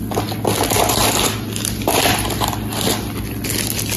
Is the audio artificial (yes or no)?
no